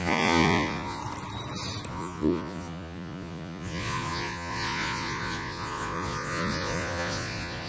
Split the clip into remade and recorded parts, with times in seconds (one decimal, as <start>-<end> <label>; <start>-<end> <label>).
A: 0.0-1.0 remade; 1.0-1.9 recorded; 1.9-7.7 remade